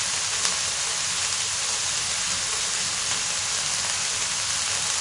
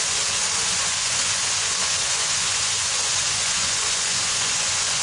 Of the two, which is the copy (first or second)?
second